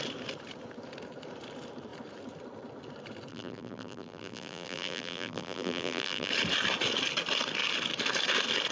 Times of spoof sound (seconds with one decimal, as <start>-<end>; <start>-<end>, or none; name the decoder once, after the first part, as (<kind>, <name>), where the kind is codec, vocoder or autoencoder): 3.3-6.3 (vocoder, BigVGAN v2)